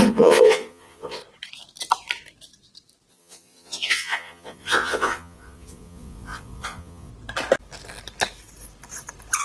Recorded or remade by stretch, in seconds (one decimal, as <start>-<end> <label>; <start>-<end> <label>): 0.0-1.2 remade; 1.2-3.1 recorded; 3.1-7.1 remade; 7.1-9.4 recorded